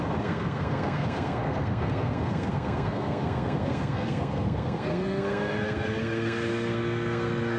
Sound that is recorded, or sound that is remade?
remade